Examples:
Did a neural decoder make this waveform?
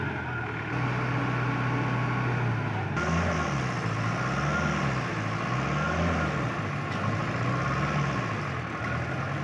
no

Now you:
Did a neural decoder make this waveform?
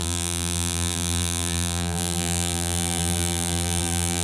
yes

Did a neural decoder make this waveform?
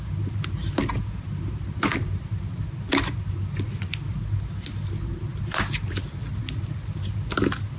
no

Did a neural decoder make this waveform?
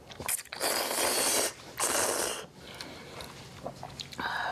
no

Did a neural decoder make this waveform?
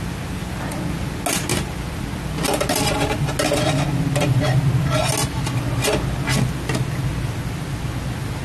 no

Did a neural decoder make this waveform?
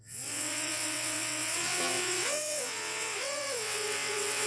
yes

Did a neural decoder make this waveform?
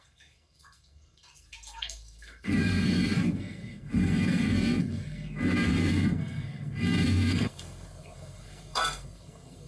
yes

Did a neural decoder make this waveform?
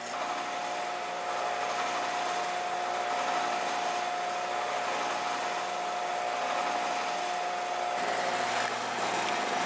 no